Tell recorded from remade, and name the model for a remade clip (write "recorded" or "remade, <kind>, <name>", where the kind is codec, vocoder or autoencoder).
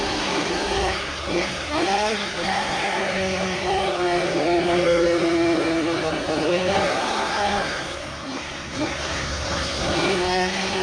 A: remade, codec, SNAC